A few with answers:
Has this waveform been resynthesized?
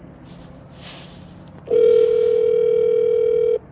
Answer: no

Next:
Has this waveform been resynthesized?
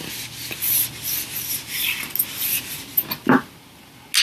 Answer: no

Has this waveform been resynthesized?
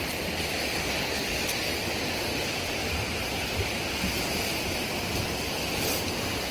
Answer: no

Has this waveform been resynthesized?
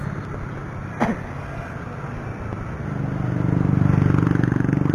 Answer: no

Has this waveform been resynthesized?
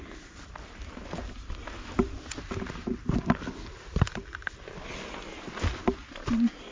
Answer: no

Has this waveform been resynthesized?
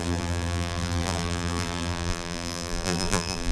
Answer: yes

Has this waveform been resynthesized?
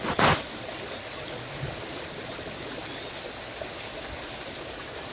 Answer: no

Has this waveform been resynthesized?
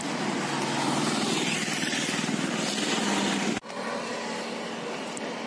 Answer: no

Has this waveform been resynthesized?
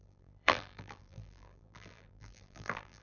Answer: yes